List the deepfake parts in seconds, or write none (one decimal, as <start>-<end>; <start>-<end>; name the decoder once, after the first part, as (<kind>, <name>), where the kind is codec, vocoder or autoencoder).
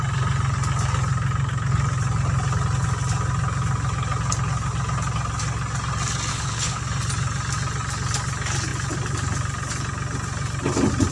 6.3-6.8 (codec, HILCodec)